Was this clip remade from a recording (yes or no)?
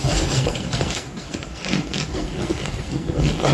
yes